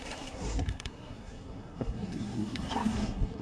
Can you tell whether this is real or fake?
fake